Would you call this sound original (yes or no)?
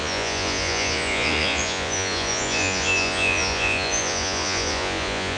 no